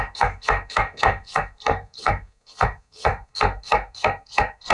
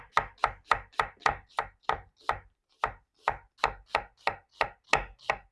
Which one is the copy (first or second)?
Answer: first